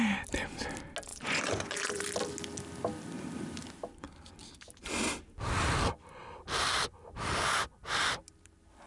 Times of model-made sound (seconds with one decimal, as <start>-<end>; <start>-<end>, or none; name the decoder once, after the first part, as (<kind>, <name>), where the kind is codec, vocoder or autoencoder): 1.1-2.0 (vocoder, Vocos)